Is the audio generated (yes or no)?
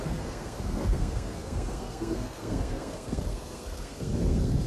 yes